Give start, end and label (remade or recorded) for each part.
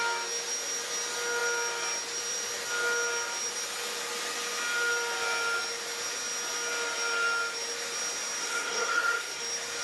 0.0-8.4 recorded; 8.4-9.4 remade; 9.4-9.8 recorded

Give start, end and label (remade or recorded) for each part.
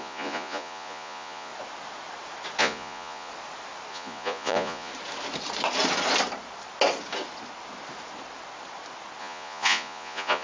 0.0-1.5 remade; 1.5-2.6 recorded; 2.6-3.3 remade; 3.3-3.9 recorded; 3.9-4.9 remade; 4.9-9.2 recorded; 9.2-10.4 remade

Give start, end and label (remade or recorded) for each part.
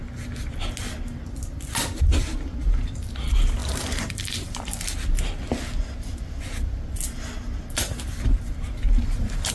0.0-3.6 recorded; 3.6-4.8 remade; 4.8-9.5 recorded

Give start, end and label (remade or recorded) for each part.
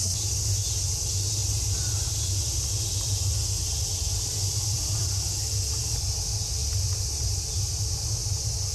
0.0-4.4 recorded; 4.4-5.1 remade; 5.1-8.7 recorded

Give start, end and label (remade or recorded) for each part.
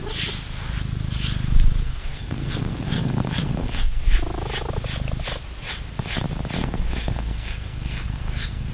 0.0-1.8 recorded; 1.8-4.0 remade; 4.0-6.6 recorded; 6.6-8.7 remade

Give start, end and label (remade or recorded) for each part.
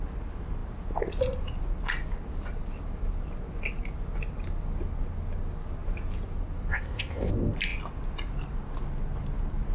0.0-6.7 recorded; 6.7-7.3 remade; 7.3-9.7 recorded